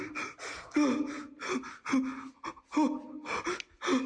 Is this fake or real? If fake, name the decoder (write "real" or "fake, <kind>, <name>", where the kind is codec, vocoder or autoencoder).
real